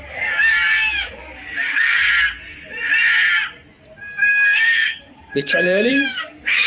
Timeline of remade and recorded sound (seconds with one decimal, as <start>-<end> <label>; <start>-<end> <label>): 0.0-2.0 remade; 2.0-4.3 recorded; 4.3-6.7 remade